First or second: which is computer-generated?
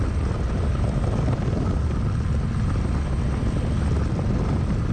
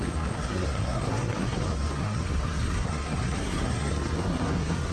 second